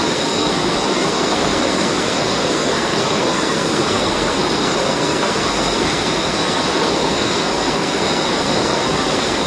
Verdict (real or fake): fake